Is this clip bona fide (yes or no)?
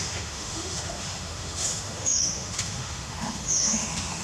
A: no